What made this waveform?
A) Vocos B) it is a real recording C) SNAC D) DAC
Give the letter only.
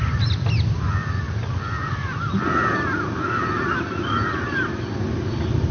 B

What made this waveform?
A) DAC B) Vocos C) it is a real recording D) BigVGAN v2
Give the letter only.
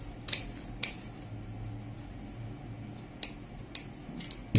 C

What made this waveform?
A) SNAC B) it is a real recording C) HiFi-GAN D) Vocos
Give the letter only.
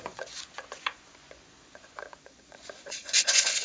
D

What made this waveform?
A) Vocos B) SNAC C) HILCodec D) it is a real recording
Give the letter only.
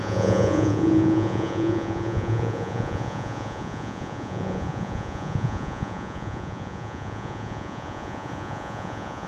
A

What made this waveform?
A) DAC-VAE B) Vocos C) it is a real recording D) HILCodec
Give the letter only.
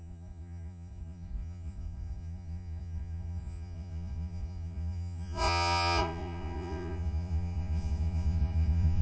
B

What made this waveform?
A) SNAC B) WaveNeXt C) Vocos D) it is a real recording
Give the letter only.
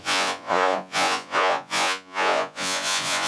C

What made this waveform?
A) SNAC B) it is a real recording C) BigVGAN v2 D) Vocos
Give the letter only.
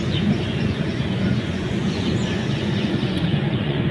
D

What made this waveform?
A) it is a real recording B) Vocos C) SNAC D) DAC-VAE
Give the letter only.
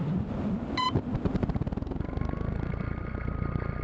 A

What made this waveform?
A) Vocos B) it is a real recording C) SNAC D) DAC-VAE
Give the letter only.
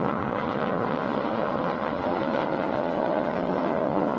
A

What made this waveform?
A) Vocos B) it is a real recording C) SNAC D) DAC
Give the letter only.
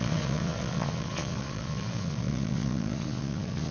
A